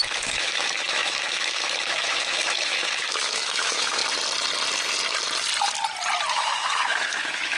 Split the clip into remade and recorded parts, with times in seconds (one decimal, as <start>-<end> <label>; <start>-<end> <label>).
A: 0.0-4.0 remade; 4.0-6.3 recorded; 6.3-7.6 remade